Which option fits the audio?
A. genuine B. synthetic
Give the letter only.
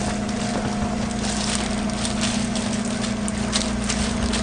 A